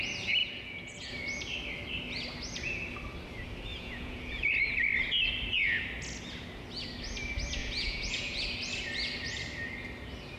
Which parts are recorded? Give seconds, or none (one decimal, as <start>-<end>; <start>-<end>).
0.0-0.4; 1.1-3.7; 4.6-7.6; 8.4-10.4